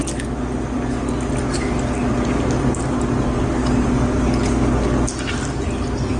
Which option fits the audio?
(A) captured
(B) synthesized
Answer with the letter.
A